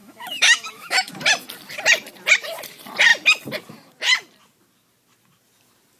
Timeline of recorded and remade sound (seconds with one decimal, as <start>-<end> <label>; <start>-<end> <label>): 0.0-1.1 remade; 1.1-6.0 recorded